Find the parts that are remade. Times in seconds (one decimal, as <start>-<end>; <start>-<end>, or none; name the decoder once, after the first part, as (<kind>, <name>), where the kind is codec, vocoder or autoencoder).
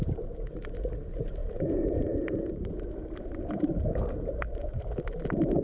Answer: 1.4-4.8 (vocoder, BigVGAN v2)